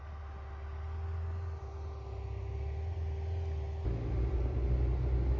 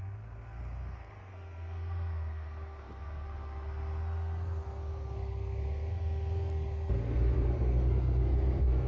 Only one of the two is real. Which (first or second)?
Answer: first